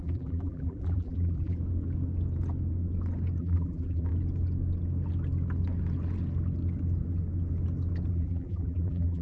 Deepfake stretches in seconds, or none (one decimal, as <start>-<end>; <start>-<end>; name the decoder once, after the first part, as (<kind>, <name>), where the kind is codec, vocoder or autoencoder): 0.0-1.6 (vocoder, BigVGAN v2); 3.4-4.1; 8.1-9.2